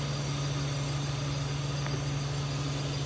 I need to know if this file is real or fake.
real